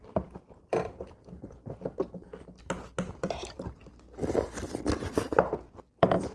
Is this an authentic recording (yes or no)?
no